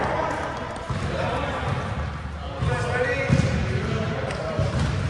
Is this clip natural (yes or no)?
yes